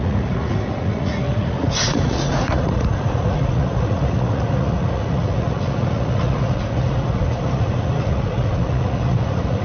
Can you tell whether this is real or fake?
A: fake